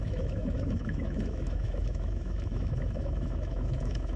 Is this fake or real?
fake